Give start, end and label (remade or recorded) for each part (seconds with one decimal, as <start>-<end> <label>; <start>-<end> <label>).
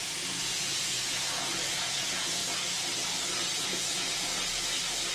0.0-2.4 remade; 2.4-3.6 recorded; 3.6-4.3 remade; 4.3-5.1 recorded